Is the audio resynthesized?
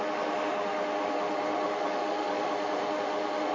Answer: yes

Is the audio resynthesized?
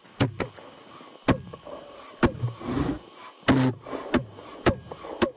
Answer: no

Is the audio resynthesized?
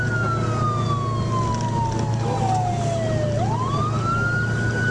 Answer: no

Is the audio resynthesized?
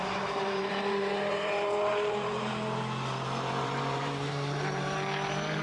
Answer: yes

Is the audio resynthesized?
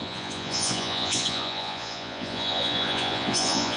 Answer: yes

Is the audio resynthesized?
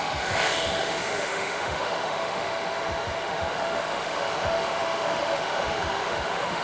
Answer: yes